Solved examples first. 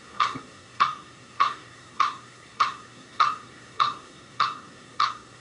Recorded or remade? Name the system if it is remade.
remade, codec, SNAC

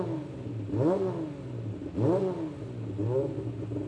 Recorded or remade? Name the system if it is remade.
recorded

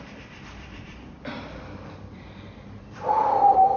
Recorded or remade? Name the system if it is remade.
remade, vocoder, BigVGAN v2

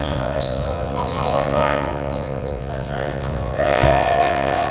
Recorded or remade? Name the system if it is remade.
remade, vocoder, WaveNeXt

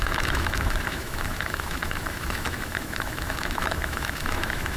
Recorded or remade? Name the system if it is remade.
remade, autoencoder, DAC-VAE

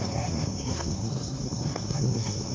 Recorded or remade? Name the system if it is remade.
remade, codec, SNAC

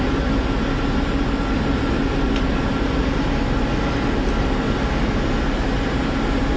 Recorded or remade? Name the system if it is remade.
recorded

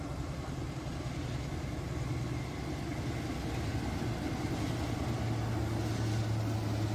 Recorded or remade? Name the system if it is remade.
recorded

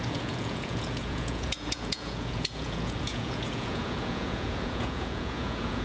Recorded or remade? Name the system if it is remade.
remade, vocoder, Vocos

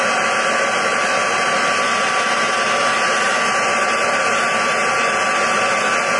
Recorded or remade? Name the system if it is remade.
recorded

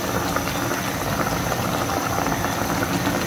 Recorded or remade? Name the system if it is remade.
recorded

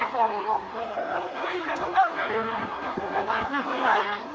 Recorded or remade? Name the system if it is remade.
remade, codec, SNAC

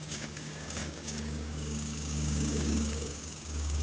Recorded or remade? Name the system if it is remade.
remade, codec, DAC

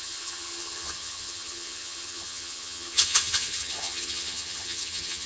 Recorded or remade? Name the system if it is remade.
remade, vocoder, HiFi-GAN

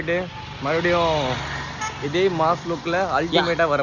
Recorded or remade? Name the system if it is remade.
recorded